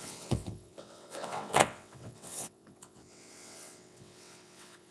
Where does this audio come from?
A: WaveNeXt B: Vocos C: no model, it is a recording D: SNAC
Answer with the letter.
A